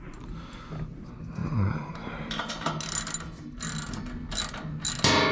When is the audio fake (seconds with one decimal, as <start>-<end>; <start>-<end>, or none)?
1.4-2.5